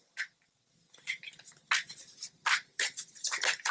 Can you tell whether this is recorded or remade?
recorded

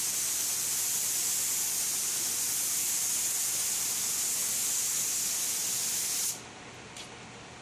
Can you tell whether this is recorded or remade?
recorded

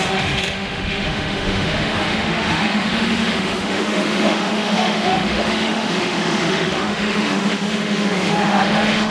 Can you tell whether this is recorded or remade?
remade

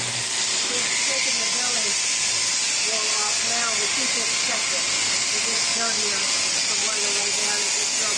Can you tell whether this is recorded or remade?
recorded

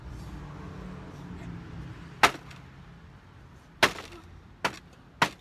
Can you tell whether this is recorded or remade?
recorded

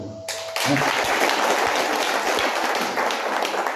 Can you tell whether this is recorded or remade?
recorded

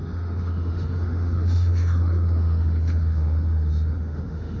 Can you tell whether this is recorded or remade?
remade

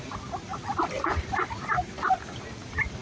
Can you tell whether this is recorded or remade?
recorded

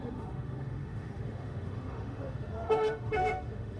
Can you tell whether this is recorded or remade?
remade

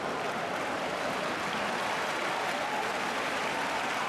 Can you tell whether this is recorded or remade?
recorded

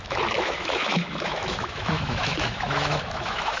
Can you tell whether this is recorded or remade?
remade